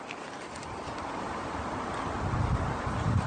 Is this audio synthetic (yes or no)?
yes